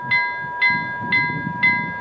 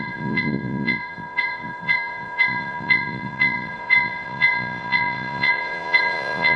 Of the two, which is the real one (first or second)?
first